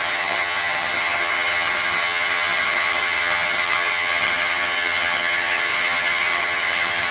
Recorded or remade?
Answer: remade